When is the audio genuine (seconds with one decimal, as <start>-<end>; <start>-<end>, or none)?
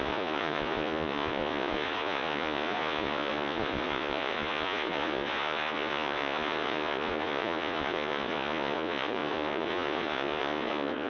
none